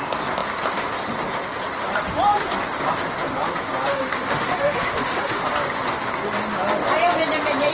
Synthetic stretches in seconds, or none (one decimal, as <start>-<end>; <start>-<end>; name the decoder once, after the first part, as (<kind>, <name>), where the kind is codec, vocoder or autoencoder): 3.9-5.4 (autoencoder, DAC-VAE)